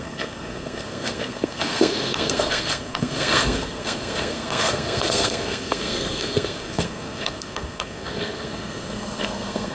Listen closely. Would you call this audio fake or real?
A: fake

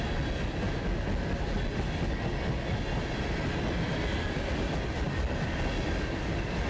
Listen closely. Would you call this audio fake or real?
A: real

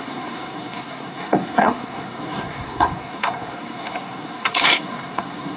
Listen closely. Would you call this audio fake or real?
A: fake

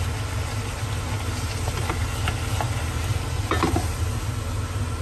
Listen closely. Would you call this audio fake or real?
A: real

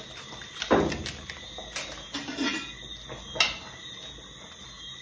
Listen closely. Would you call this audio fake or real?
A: real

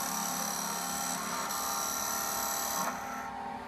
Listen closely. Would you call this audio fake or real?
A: real